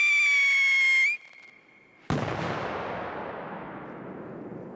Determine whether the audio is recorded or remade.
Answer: recorded